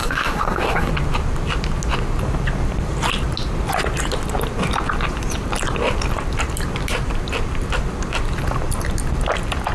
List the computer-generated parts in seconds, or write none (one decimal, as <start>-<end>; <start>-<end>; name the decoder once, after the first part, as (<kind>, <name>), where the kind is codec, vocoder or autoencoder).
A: 0.0-0.9 (codec, SNAC)